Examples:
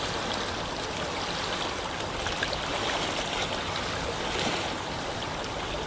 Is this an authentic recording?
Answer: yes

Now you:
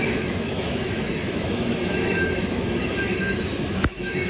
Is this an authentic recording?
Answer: no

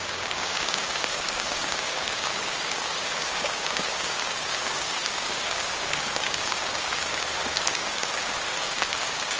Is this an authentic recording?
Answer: no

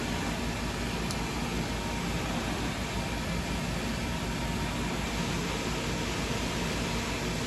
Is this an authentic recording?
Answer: yes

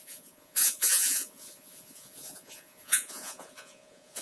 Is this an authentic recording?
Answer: no